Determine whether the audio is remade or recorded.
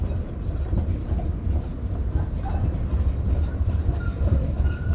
recorded